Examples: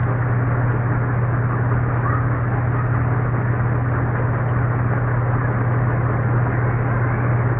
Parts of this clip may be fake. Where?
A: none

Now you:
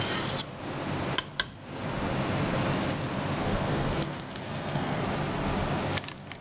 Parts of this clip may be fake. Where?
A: 3.4-5.0 (codec, SNAC)